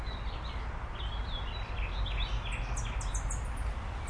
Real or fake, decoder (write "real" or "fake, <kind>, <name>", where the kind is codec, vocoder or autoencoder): real